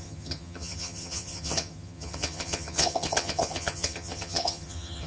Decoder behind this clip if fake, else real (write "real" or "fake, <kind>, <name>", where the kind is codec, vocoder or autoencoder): fake, vocoder, HiFi-GAN